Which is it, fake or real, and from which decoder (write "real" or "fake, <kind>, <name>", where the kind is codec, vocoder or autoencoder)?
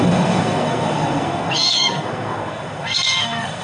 fake, codec, SNAC